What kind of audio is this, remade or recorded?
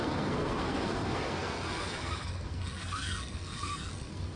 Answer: remade